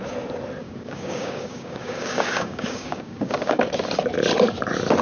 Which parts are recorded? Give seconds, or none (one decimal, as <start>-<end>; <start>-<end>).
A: 0.0-0.6; 3.6-5.0